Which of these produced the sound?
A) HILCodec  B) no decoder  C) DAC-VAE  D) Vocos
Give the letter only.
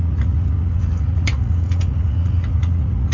D